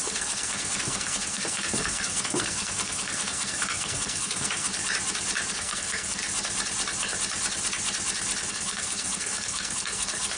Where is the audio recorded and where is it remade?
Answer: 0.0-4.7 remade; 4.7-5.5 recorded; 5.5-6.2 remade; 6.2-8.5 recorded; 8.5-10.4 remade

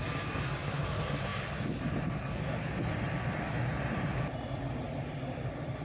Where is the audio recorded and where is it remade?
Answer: 0.0-5.8 recorded

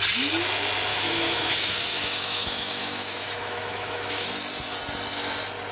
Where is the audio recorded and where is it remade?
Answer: 0.0-0.9 recorded; 0.9-4.3 remade; 4.3-5.7 recorded

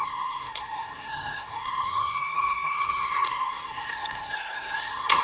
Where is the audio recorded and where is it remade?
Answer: 0.0-5.2 remade

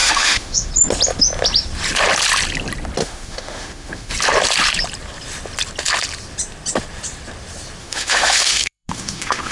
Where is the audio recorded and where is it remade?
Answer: 0.0-0.7 remade; 0.7-3.0 recorded; 3.0-4.1 remade; 4.1-7.8 recorded; 7.8-9.5 remade